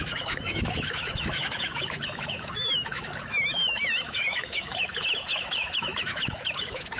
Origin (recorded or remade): remade